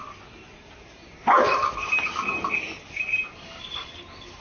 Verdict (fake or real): real